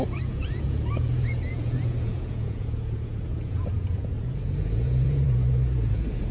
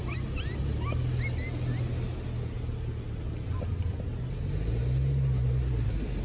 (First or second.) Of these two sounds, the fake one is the first